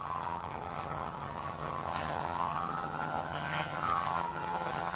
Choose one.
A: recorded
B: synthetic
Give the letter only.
B